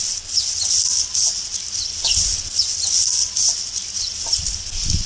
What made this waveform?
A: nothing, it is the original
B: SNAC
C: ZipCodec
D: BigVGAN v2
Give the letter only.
A